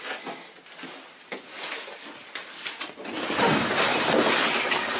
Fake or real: real